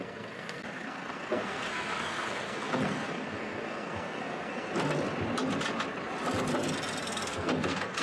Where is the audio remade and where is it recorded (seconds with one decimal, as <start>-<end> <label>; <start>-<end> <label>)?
0.0-4.7 remade; 4.7-7.0 recorded; 7.0-8.0 remade